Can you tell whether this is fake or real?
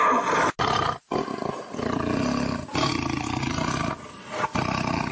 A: real